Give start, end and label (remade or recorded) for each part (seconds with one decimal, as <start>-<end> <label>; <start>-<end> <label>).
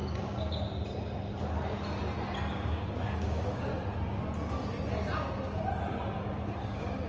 0.0-2.5 recorded; 2.5-3.7 remade; 3.7-6.6 recorded; 6.6-7.1 remade